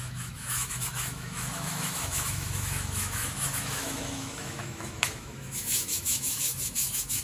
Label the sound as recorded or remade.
remade